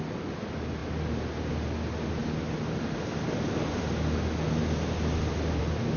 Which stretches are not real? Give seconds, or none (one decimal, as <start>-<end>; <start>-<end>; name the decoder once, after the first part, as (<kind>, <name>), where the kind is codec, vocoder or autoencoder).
none